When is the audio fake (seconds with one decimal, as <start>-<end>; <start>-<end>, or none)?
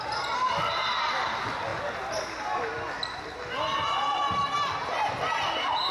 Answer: none